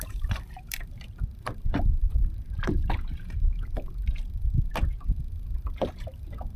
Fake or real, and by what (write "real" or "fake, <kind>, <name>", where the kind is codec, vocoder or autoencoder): fake, vocoder, BigVGAN v2